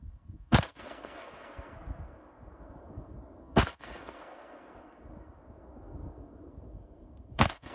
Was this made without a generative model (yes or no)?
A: no